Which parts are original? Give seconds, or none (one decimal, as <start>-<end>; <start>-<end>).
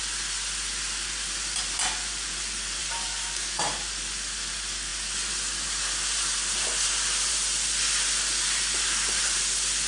0.0-2.8; 3.6-9.9